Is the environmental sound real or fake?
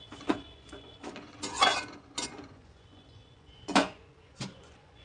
fake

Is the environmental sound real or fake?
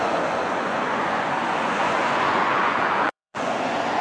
fake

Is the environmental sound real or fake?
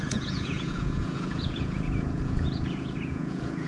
fake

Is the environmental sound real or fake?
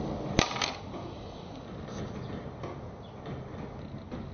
real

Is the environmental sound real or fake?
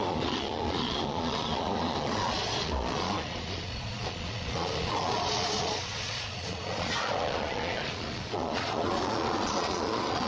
fake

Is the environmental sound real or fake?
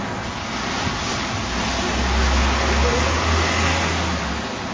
real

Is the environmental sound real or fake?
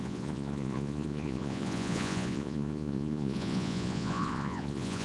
fake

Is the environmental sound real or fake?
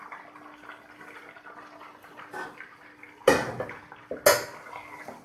real